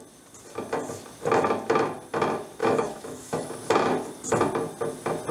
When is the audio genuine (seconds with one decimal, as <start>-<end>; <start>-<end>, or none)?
0.0-2.6; 3.5-5.3